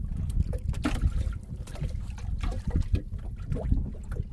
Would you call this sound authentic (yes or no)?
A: yes